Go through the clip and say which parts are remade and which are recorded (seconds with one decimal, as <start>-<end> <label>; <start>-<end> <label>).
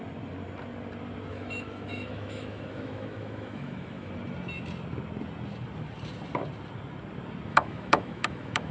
0.0-1.3 recorded; 1.3-4.1 remade; 4.1-7.5 recorded; 7.5-8.7 remade